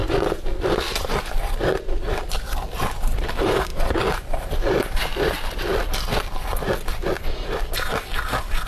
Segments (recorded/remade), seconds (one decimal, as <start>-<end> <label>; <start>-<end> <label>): 0.0-3.7 remade; 3.7-8.7 recorded